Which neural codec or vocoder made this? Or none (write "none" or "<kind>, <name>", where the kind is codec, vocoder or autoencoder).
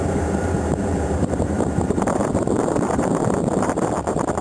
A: vocoder, BigVGAN v2